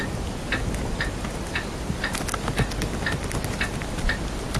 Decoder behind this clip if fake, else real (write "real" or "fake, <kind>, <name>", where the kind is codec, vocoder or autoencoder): real